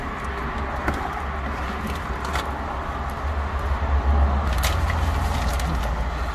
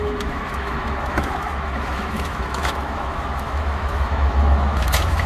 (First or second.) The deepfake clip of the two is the second